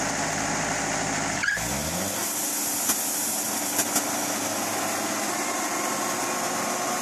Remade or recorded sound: recorded